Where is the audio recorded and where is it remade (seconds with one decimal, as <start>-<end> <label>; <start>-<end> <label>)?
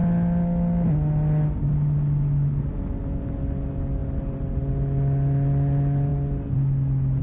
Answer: 0.0-7.2 recorded